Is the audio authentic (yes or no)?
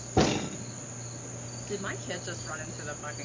yes